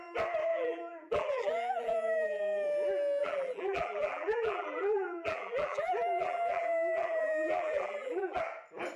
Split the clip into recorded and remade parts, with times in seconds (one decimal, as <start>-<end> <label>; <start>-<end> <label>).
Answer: 0.0-0.5 recorded; 0.5-2.4 remade; 2.4-3.2 recorded; 3.2-8.4 remade; 8.4-9.0 recorded